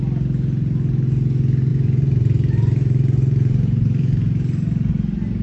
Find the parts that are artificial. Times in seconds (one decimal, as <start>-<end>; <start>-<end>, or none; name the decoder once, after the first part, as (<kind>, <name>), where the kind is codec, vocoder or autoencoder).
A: 1.7-4.9 (vocoder, BigVGAN v2)

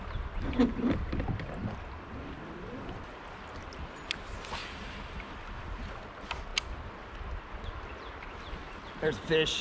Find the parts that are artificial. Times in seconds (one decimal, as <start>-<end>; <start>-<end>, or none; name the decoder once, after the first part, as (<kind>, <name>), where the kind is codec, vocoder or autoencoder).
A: 4.6-5.3 (vocoder, BigVGAN v2)